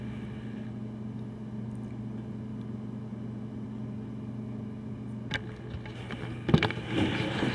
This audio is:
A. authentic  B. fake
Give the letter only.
A